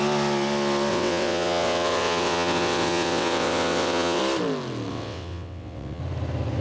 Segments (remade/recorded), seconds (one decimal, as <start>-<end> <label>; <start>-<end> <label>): 0.0-0.9 recorded; 0.9-4.2 remade; 4.2-4.9 recorded; 4.9-6.0 remade; 6.0-6.6 recorded